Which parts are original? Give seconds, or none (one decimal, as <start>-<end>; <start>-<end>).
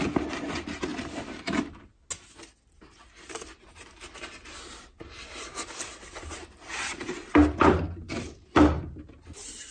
0.0-9.7